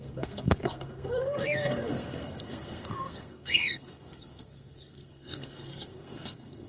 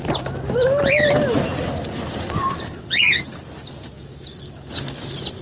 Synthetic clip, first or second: first